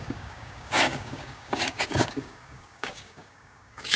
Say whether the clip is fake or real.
fake